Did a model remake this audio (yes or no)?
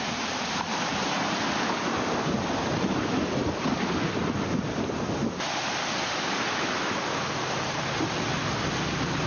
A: no